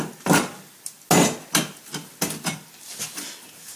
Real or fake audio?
real